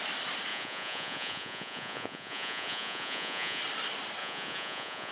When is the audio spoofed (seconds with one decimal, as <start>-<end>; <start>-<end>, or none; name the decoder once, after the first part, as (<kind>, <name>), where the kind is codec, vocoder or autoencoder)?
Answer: 0.5-3.6 (vocoder, Vocos); 4.2-5.1